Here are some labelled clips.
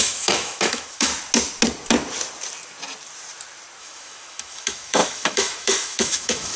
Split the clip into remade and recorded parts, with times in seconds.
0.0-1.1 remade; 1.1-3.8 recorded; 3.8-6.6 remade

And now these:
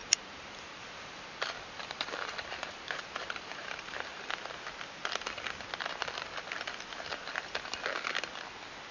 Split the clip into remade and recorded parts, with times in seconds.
0.0-4.3 remade; 4.3-8.9 recorded

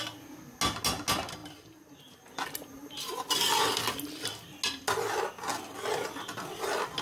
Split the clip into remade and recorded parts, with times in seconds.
0.0-7.0 recorded

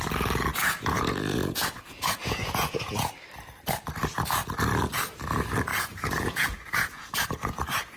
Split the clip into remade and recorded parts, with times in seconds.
0.0-0.5 recorded; 0.5-3.1 remade; 3.1-5.7 recorded; 5.7-7.3 remade; 7.3-8.0 recorded

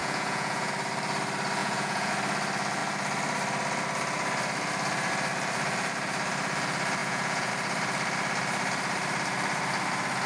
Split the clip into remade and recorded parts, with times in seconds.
0.0-0.7 remade; 0.7-1.6 recorded; 1.6-2.1 remade; 2.1-7.0 recorded; 7.0-7.5 remade; 7.5-10.3 recorded

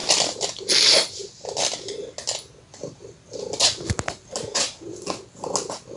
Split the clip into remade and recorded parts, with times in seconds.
0.0-6.0 recorded

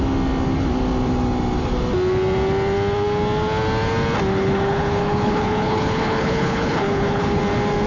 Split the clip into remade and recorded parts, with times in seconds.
0.0-4.3 recorded; 4.3-7.4 remade; 7.4-7.9 recorded

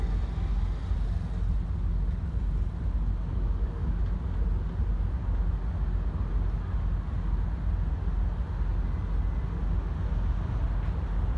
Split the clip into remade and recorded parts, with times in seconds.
0.0-3.3 recorded; 3.3-4.0 remade; 4.0-11.4 recorded